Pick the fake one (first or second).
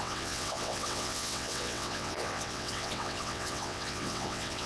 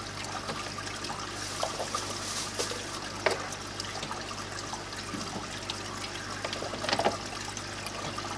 first